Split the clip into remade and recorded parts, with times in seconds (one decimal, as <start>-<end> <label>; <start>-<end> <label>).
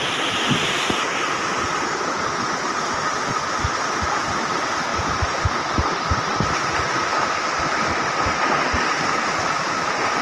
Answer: 0.0-10.2 recorded